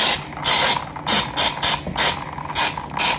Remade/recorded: recorded